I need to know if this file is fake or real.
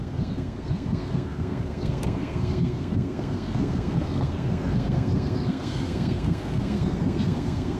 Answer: fake